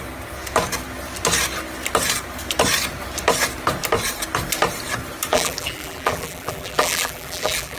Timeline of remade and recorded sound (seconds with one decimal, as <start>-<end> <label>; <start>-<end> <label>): 0.0-5.3 recorded; 5.3-7.8 remade